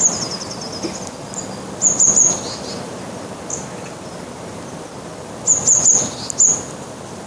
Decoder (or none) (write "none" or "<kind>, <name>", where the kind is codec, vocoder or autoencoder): none